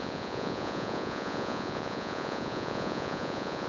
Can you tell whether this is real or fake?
fake